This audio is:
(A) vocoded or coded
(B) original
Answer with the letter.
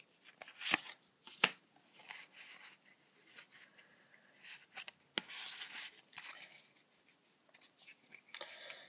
B